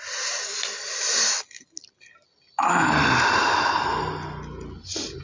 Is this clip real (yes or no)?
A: yes